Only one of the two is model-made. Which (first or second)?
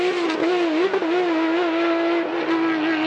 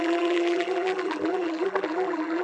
second